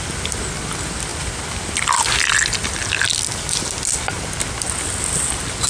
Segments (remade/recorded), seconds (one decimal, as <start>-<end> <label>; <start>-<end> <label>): 0.0-5.7 recorded